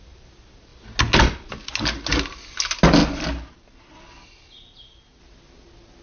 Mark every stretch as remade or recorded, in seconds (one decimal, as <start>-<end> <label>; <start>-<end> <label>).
0.0-6.0 recorded